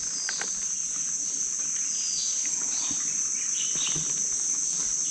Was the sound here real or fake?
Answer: real